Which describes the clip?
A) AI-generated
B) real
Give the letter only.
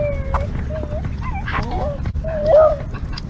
B